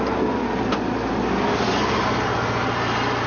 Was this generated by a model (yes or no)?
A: no